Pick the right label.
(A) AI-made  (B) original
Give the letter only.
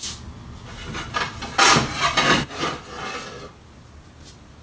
B